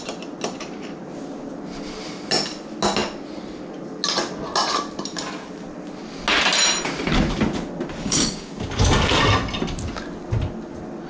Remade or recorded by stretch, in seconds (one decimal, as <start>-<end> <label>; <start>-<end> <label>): 0.0-8.0 recorded; 8.0-8.5 remade; 8.5-11.1 recorded